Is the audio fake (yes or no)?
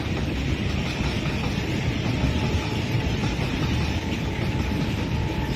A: no